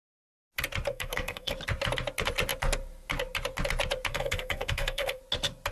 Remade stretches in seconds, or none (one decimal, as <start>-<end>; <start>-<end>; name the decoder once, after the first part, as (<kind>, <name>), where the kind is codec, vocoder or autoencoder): 0.9-1.5 (codec, SNAC); 4.1-5.2